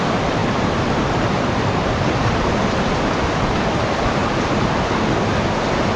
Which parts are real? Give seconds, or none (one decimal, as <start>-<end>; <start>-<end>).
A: 0.0-0.4; 2.5-6.0